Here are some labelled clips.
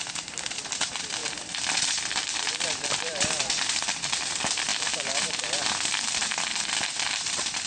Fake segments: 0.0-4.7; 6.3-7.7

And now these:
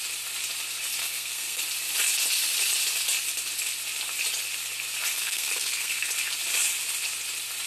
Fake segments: 1.0-1.6; 5.1-6.1

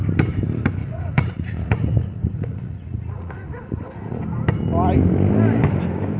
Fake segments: 0.8-4.2